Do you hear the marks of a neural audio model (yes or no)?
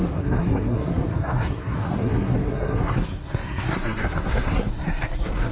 yes